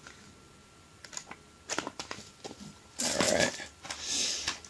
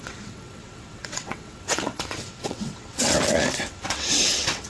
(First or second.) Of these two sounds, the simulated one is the second